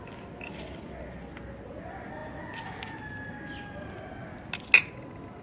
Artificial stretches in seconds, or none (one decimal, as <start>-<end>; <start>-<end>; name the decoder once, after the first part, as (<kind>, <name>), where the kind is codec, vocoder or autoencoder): none